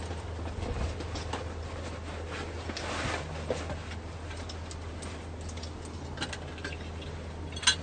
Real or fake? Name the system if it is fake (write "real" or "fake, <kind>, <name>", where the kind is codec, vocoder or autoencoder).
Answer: real